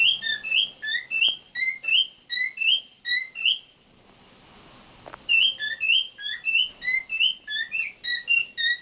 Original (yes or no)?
yes